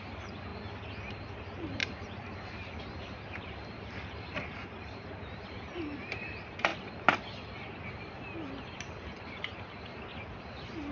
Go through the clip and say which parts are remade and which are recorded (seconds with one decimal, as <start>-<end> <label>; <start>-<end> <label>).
0.0-0.5 remade; 0.5-1.1 recorded; 1.1-6.7 remade; 6.7-9.2 recorded; 9.2-10.9 remade